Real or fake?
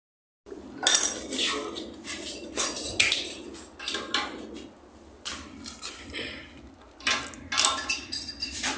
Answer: real